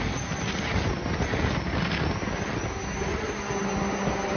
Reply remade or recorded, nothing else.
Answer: recorded